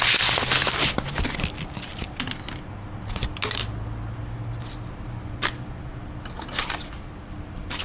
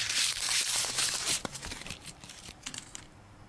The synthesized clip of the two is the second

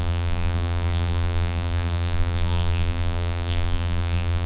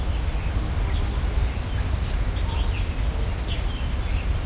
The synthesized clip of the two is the first